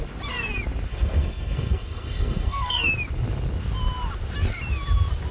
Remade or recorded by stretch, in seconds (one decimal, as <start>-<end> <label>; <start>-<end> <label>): 0.0-0.9 recorded; 0.9-2.9 remade; 2.9-5.3 recorded